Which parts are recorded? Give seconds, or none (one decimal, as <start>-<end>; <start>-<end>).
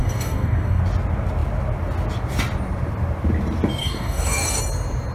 0.8-3.8; 4.6-5.1